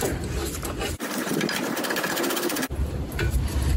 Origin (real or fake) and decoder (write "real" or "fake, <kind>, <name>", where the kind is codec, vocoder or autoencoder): real